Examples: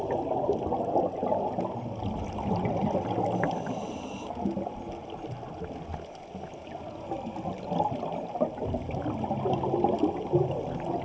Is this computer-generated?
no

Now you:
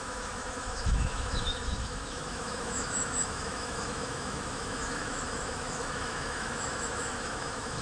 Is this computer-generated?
yes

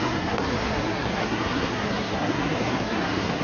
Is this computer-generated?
yes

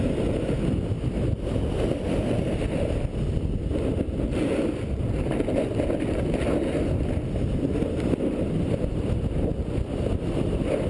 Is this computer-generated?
no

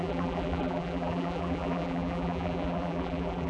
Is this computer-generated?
yes